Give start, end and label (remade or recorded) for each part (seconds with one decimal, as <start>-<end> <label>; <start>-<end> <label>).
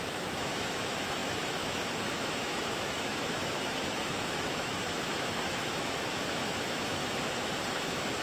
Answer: 0.0-7.0 remade; 7.0-7.7 recorded; 7.7-8.2 remade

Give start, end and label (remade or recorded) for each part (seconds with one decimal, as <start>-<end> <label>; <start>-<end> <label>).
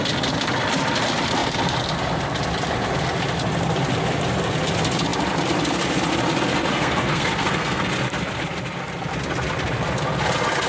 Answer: 0.0-6.7 recorded; 6.7-7.8 remade; 7.8-10.7 recorded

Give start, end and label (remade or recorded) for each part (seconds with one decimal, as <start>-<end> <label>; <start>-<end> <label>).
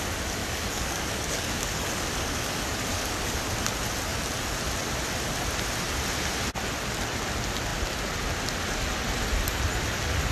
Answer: 0.0-0.4 recorded; 0.4-3.4 remade; 3.4-10.3 recorded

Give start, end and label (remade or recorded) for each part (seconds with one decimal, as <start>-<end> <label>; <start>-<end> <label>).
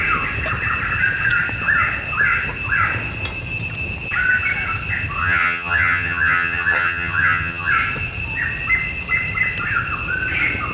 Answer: 0.0-5.2 recorded; 5.2-7.7 remade; 7.7-10.7 recorded